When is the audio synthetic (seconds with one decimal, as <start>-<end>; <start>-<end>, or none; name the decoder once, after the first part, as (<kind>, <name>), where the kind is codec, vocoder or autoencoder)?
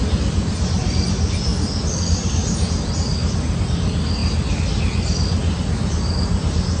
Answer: none